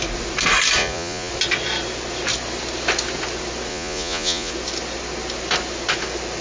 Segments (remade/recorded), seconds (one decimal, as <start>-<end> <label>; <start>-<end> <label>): 0.0-0.8 recorded; 0.8-1.3 remade; 1.3-3.7 recorded; 3.7-4.5 remade; 4.5-6.4 recorded